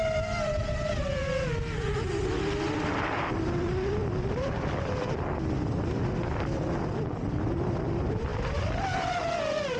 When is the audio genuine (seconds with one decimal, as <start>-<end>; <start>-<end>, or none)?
0.0-9.8

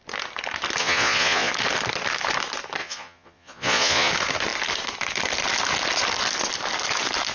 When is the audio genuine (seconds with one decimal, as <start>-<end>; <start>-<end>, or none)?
0.0-0.8; 1.5-2.8; 4.1-7.3

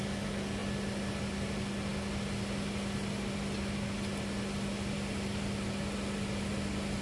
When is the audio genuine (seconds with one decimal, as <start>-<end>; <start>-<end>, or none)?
0.0-7.0

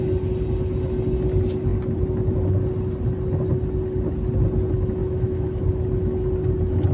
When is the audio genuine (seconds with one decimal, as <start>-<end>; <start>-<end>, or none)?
0.0-5.0; 5.6-6.9

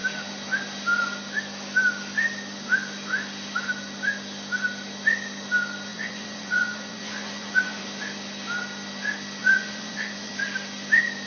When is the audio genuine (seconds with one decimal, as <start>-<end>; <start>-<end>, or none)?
0.0-5.9; 7.8-9.4; 10.3-11.3

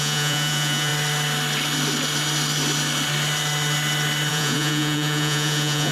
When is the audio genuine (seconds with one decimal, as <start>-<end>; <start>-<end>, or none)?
0.9-4.3

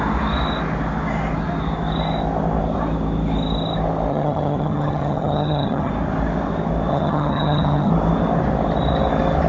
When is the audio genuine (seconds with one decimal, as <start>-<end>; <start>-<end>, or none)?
0.0-4.1; 5.9-6.9; 7.9-9.5